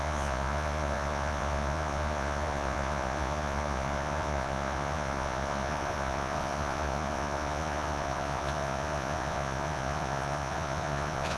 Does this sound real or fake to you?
fake